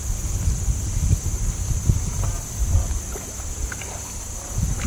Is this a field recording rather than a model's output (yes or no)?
yes